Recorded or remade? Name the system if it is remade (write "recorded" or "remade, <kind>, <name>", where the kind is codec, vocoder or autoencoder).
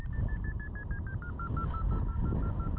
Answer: recorded